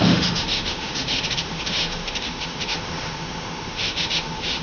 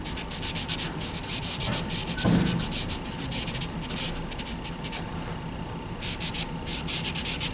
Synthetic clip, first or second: first